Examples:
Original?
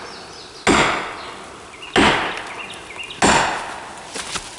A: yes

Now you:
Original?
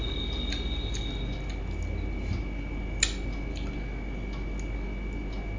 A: yes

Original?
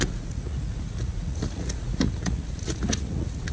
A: no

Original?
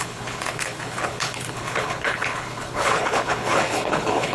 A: no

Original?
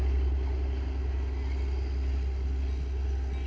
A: yes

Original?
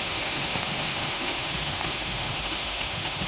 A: no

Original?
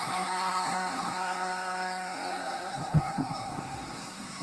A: no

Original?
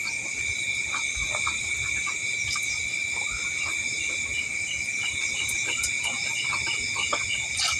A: yes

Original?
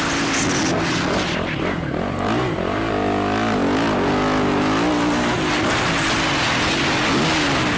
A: yes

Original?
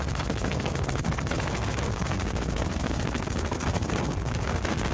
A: no